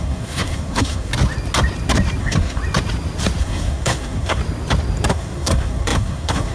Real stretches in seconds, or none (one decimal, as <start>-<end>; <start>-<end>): 1.1-2.2; 2.6-3.4; 4.4-5.1